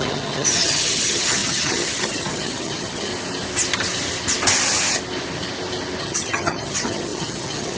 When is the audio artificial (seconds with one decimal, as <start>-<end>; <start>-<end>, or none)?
0.0-3.1; 6.0-7.8